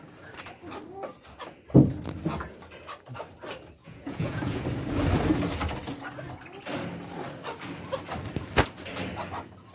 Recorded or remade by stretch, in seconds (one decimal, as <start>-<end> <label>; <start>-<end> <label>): 0.0-3.8 recorded; 3.8-4.6 remade; 4.6-9.7 recorded